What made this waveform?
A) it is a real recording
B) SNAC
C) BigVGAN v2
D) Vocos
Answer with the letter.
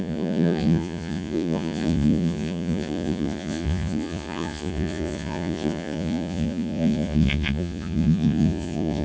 D